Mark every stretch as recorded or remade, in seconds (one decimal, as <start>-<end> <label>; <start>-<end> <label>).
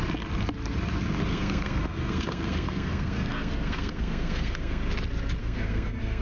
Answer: 0.0-1.3 recorded; 1.3-4.9 remade; 4.9-5.4 recorded; 5.4-6.2 remade